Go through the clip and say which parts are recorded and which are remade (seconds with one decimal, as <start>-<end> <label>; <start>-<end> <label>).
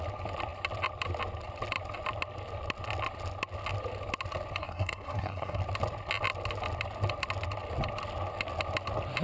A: 0.0-4.6 recorded; 4.6-5.6 remade; 5.6-9.2 recorded